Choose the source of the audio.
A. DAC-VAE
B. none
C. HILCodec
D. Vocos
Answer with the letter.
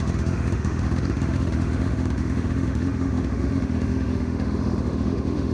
A